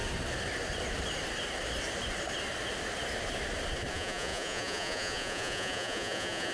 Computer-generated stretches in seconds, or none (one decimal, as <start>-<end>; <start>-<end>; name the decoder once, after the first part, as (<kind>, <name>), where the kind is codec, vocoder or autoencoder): 3.9-6.5 (vocoder, Vocos)